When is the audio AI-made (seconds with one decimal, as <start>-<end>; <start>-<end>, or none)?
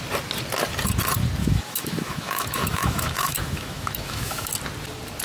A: 1.4-4.5